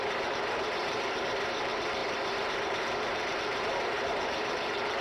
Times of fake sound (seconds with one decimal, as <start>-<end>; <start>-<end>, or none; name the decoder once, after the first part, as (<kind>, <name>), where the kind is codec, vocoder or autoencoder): 0.0-5.0 (vocoder, BigVGAN v2)